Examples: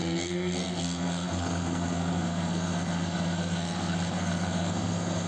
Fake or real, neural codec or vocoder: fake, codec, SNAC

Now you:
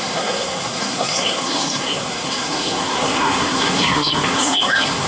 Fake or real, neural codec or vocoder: fake, codec, SNAC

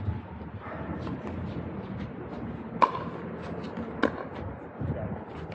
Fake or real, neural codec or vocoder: real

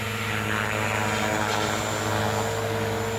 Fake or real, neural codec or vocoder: real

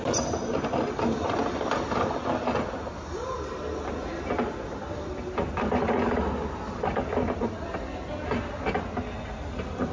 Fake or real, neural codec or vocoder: real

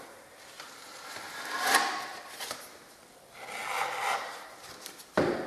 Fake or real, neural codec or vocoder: real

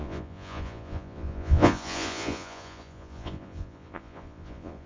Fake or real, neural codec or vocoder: fake, vocoder, Vocos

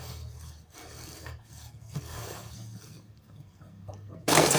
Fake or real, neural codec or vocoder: fake, codec, SNAC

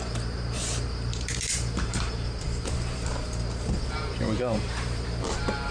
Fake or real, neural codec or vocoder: fake, vocoder, BigVGAN v2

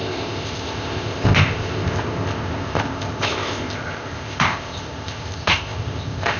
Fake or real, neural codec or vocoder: fake, codec, ZipCodec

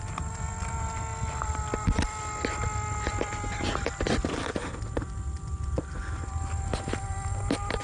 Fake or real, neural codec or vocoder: fake, vocoder, BigVGAN v2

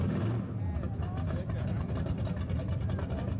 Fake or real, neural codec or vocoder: real